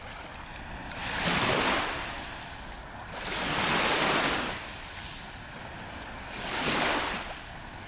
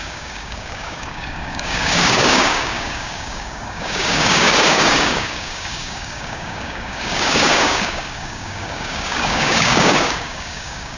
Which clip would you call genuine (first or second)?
first